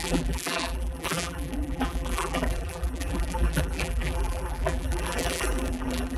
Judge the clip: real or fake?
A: fake